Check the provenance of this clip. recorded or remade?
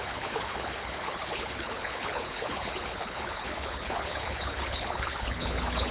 remade